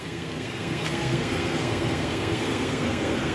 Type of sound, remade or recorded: remade